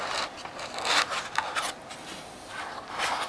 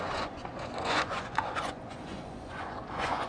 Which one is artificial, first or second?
second